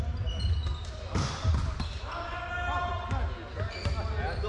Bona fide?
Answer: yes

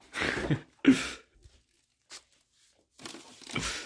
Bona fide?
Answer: yes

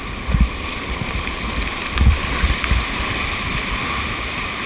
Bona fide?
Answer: no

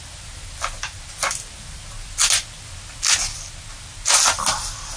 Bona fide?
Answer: yes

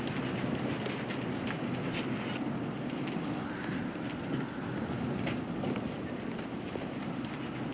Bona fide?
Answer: yes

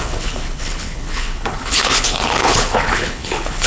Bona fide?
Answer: no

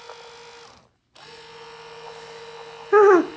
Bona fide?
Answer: yes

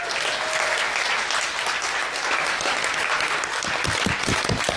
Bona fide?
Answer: yes